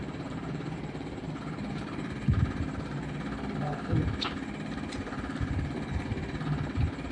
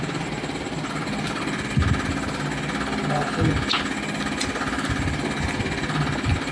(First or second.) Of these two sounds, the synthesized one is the first